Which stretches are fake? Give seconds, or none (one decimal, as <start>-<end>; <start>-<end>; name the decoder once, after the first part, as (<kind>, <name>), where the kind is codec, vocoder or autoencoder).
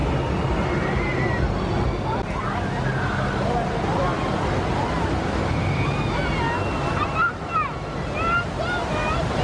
none